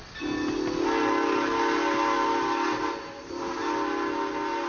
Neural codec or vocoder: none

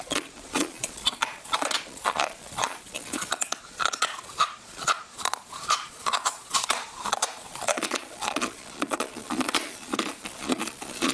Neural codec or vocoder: vocoder, Vocos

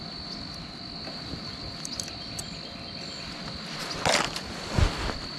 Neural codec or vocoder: none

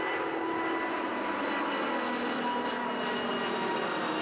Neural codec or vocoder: none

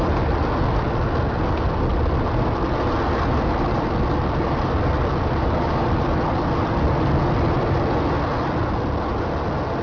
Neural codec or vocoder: none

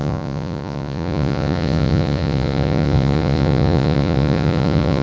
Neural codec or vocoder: vocoder, Vocos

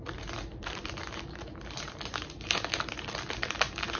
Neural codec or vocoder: none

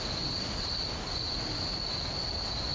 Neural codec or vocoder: none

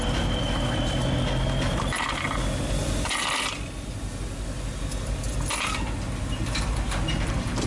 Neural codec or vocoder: none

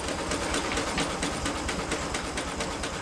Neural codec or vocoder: none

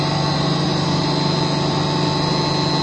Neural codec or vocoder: none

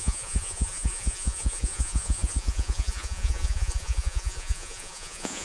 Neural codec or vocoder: vocoder, Vocos